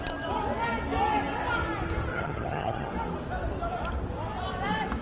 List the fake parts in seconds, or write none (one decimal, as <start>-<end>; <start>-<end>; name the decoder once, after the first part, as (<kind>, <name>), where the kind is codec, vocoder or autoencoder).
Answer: 2.1-2.9 (vocoder, HiFi-GAN)